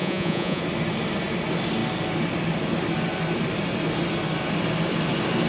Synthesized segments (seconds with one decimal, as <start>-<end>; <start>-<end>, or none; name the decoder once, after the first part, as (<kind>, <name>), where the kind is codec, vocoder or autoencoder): 0.0-0.6 (vocoder, Vocos)